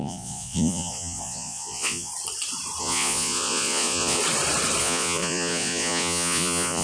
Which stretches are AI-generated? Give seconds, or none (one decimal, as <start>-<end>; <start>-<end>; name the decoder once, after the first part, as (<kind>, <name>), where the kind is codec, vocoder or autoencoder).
0.0-2.1 (vocoder, Vocos); 2.8-4.2; 4.8-6.8